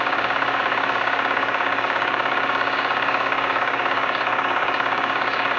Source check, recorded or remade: remade